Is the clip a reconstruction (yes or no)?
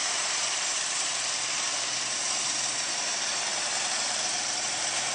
yes